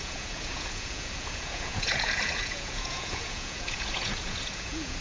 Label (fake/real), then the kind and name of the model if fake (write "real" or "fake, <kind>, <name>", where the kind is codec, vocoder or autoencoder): fake, vocoder, Vocos